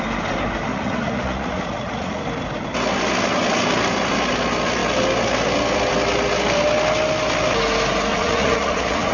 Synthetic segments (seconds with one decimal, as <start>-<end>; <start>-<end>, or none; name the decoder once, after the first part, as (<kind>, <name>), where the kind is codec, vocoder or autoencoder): 0.7-2.2 (vocoder, Vocos); 8.1-9.1